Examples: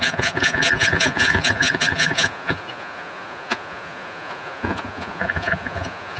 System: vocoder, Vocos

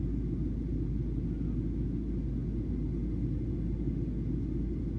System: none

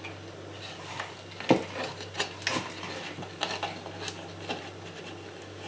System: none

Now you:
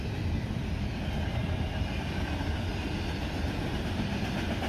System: none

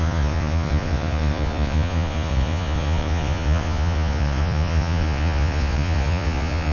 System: vocoder, Vocos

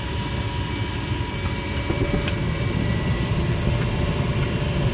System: none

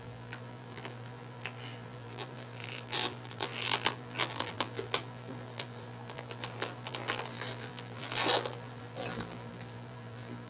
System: vocoder, BigVGAN v2